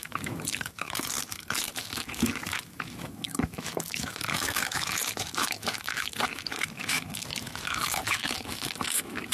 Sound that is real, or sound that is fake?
fake